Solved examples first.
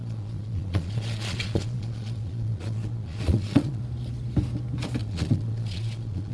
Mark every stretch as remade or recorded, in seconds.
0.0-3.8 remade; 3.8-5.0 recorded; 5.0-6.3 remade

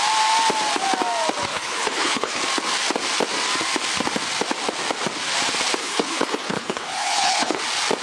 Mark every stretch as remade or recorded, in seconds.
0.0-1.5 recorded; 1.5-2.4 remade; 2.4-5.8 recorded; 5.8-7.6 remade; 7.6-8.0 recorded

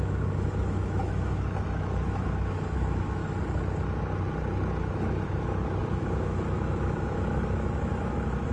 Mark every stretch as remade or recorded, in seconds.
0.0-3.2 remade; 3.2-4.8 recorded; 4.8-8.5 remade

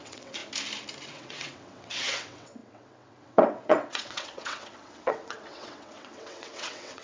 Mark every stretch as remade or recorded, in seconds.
0.0-0.4 remade; 0.4-1.1 recorded; 1.1-7.0 remade